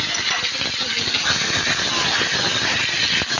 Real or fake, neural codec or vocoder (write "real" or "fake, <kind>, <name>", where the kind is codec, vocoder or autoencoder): real